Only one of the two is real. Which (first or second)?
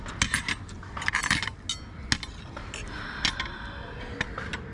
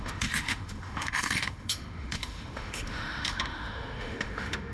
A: first